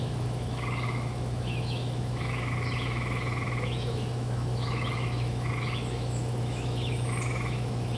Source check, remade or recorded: remade